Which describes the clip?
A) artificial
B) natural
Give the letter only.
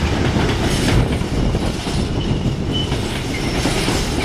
B